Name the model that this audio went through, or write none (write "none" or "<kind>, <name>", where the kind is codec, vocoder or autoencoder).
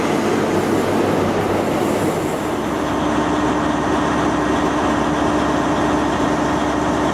none